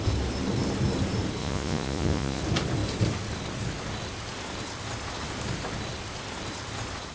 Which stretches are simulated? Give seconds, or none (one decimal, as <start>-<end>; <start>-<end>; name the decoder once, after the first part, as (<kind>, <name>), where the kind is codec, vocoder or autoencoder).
1.4-2.4 (vocoder, Vocos)